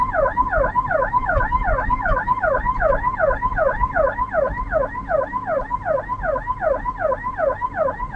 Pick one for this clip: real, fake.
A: real